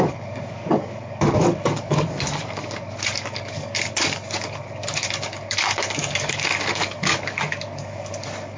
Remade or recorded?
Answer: remade